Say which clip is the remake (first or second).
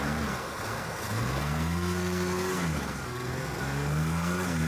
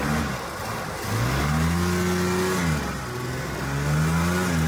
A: first